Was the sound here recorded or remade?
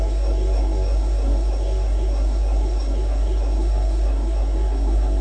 remade